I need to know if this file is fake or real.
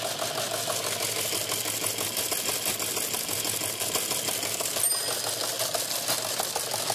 real